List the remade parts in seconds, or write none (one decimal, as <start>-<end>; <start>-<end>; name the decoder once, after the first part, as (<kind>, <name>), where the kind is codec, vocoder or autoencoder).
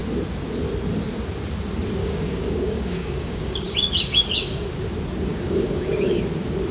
2.0-4.8 (codec, DAC); 5.3-6.2